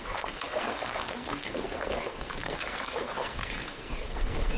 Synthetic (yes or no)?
yes